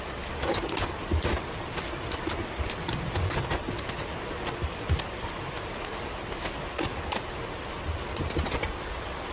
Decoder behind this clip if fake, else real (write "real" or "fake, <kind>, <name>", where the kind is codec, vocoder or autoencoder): real